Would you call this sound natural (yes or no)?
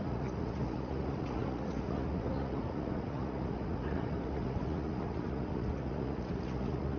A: no